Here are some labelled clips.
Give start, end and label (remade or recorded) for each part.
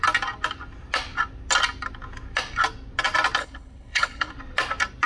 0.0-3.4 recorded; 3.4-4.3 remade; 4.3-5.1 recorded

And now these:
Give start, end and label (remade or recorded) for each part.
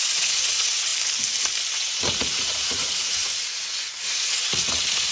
0.0-0.9 remade; 0.9-1.7 recorded; 1.7-5.1 remade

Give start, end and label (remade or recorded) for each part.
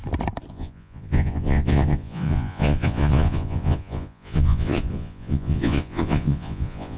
0.0-0.5 recorded; 0.5-7.0 remade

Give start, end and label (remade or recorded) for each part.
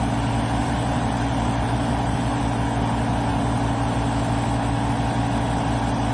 0.0-0.6 recorded; 0.6-2.4 remade; 2.4-6.1 recorded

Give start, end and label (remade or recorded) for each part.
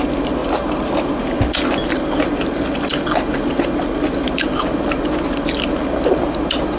0.0-6.8 recorded